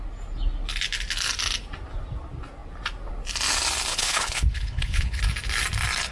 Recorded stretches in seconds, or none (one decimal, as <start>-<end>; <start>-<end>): 0.0-3.9; 5.2-6.1